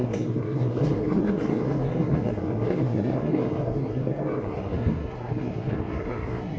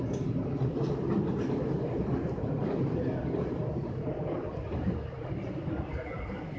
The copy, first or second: first